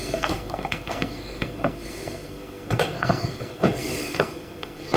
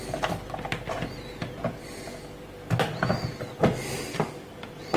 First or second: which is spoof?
first